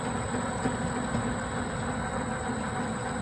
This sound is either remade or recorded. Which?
recorded